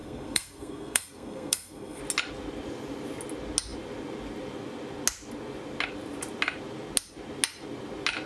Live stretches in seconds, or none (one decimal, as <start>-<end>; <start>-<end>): 2.0-8.3